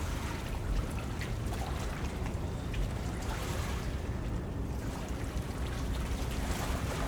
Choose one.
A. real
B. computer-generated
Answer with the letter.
B